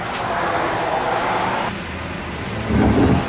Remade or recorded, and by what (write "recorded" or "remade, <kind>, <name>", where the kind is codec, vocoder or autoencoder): recorded